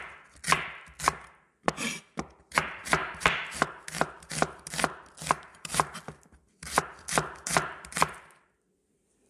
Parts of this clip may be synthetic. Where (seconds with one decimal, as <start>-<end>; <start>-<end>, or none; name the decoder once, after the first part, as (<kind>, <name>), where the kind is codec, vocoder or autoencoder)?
3.0-4.3 (vocoder, BigVGAN v2)